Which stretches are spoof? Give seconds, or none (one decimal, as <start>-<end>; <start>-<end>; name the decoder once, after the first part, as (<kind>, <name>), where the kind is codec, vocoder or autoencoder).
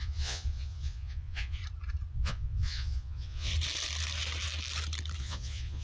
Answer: 0.0-1.6 (vocoder, Vocos); 2.1-3.5; 5.2-5.8